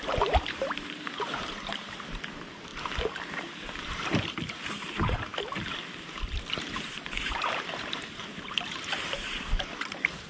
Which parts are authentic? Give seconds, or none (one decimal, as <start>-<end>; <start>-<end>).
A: 2.7-4.7; 5.3-7.2